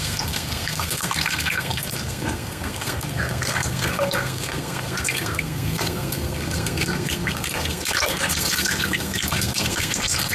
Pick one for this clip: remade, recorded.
remade